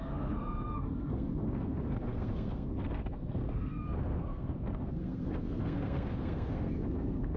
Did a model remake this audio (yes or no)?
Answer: yes